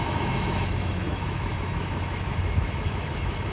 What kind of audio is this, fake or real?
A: fake